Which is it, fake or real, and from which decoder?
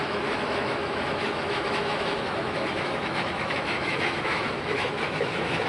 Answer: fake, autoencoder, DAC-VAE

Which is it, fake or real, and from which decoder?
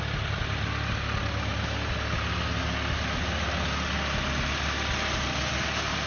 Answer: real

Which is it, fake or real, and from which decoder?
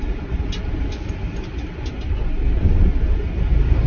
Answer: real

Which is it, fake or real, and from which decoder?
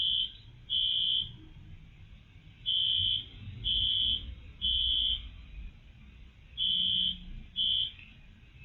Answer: real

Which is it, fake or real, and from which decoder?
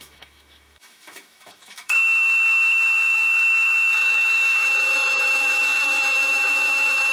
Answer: fake, autoencoder, DAC-VAE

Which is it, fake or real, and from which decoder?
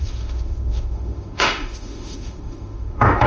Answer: fake, autoencoder, DAC-VAE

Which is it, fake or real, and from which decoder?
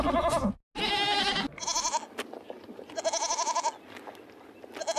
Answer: real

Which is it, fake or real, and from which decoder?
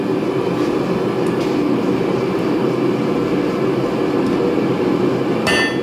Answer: real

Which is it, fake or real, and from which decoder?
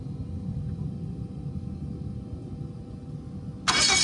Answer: real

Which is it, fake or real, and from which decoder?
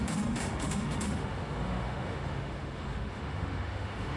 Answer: fake, autoencoder, DAC-VAE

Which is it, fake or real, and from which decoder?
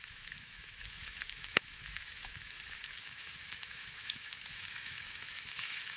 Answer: fake, autoencoder, DAC-VAE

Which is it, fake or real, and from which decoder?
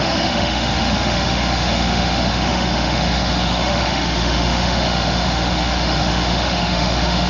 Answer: fake, autoencoder, DAC-VAE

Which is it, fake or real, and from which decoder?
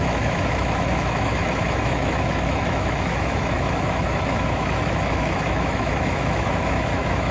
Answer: fake, autoencoder, DAC-VAE